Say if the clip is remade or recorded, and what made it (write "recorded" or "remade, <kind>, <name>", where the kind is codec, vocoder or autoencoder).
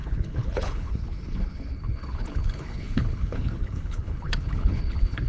remade, codec, HILCodec